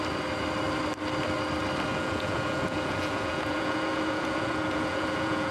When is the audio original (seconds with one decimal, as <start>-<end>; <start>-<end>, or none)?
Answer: 0.0-1.9